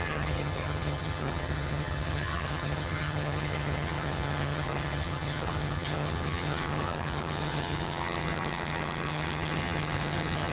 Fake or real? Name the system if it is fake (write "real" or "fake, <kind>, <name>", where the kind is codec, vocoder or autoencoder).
fake, vocoder, HiFi-GAN